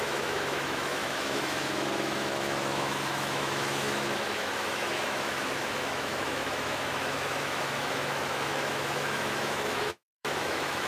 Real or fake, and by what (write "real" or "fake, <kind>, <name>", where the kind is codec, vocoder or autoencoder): fake, autoencoder, DAC-VAE